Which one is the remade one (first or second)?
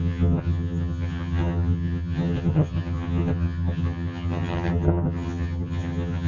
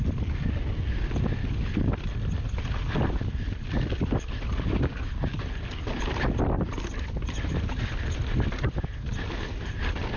first